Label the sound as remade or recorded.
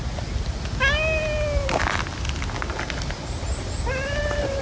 recorded